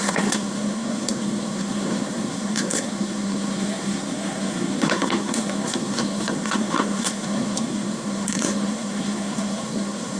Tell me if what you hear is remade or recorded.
remade